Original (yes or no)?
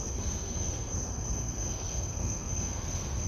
no